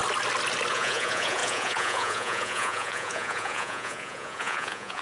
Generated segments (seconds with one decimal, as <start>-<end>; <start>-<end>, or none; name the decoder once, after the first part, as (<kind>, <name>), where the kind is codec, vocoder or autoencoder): 0.7-5.0 (vocoder, Vocos)